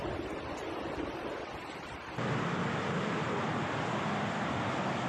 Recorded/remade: recorded